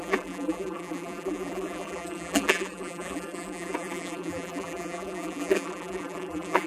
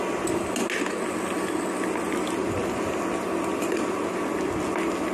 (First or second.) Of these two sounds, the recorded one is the second